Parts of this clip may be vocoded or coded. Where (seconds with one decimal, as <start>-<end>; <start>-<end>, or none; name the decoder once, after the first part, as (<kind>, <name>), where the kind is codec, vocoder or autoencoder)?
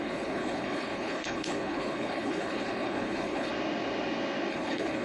0.0-3.5 (codec, HILCodec); 4.5-5.0